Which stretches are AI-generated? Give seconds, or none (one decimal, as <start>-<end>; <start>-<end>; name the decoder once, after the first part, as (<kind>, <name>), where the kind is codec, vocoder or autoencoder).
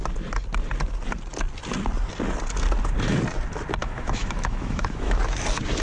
3.8-5.2 (autoencoder, DAC-VAE)